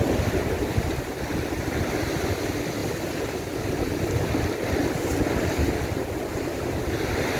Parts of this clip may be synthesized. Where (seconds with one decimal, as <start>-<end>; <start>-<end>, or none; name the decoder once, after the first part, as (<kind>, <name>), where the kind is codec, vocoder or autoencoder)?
none